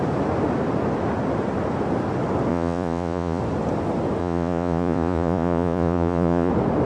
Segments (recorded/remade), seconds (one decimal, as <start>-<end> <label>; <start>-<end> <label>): 0.0-2.5 recorded; 2.5-3.4 remade; 3.4-4.2 recorded; 4.2-6.5 remade; 6.5-6.9 recorded